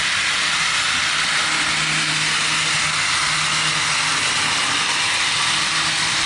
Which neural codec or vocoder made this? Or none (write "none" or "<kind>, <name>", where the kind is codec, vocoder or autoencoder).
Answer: none